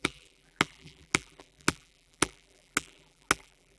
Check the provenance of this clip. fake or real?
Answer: fake